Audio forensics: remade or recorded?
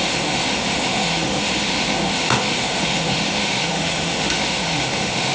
remade